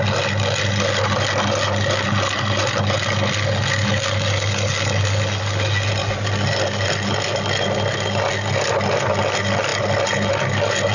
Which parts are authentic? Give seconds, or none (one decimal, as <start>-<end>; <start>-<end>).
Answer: 0.0-10.9